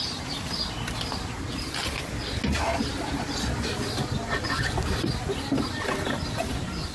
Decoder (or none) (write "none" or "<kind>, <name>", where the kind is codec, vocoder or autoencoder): none